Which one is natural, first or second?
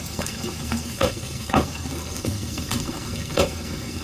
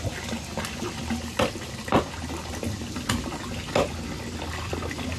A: second